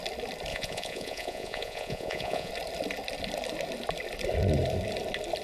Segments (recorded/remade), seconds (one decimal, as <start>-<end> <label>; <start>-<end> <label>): 0.0-0.5 recorded; 0.5-2.5 remade; 2.5-5.4 recorded